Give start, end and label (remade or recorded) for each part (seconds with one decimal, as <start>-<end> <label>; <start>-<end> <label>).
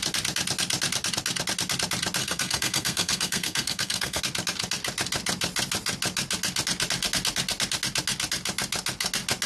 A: 0.0-2.2 recorded; 2.2-4.2 remade; 4.2-9.5 recorded